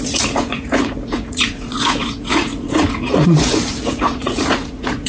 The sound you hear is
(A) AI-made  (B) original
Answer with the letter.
A